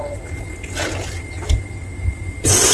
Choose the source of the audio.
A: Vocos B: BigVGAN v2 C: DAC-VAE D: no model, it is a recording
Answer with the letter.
D